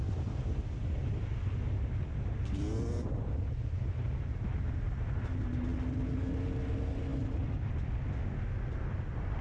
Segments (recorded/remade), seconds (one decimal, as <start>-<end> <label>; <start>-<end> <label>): 0.0-9.4 recorded